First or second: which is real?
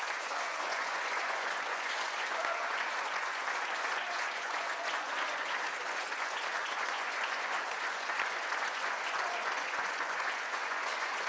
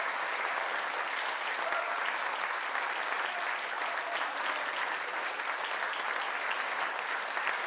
second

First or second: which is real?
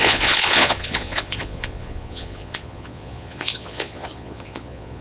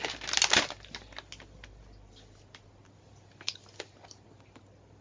second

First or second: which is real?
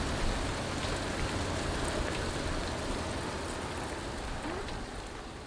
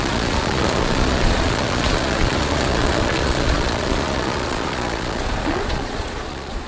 first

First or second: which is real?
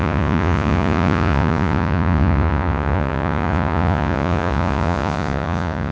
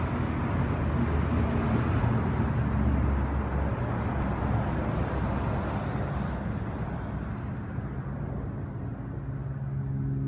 second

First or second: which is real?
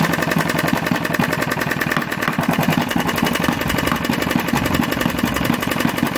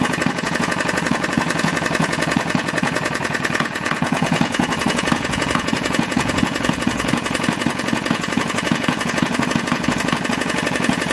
first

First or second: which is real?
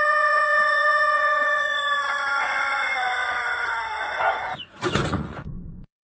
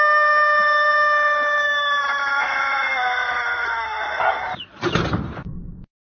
second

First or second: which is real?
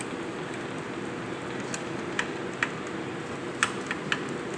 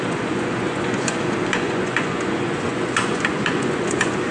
first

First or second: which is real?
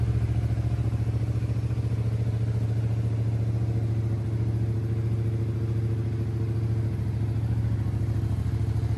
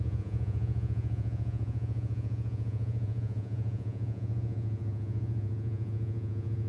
first